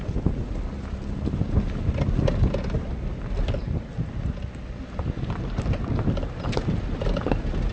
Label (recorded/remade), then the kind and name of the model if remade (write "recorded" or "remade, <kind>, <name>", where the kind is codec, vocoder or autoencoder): recorded